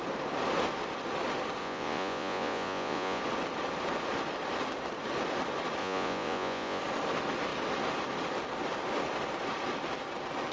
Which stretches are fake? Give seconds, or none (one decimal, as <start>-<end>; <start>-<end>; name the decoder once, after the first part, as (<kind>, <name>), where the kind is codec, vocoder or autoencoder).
1.6-3.2 (vocoder, Vocos); 5.8-6.8